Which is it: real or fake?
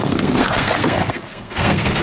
fake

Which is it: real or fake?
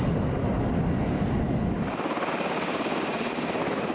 real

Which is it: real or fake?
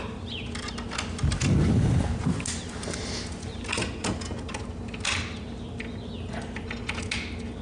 real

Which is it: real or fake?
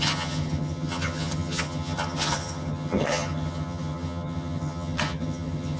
fake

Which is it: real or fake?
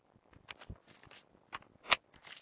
real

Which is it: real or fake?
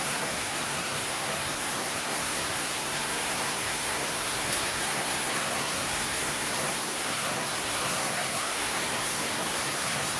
fake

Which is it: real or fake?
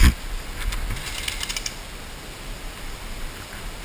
real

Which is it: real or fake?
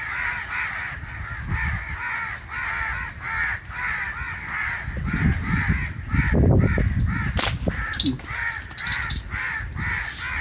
real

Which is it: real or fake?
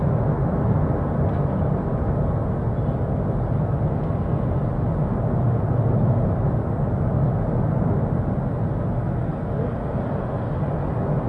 real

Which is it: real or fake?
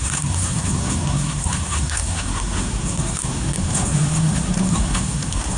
fake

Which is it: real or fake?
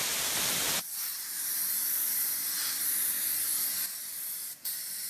real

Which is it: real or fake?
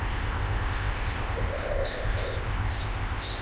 fake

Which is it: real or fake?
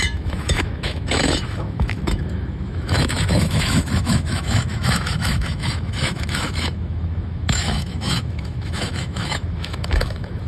fake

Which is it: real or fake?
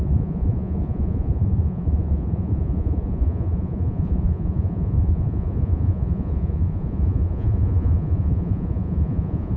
fake